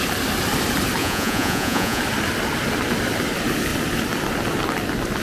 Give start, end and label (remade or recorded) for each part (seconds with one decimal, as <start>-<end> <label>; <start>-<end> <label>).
0.0-1.0 recorded; 1.0-2.0 remade; 2.0-5.2 recorded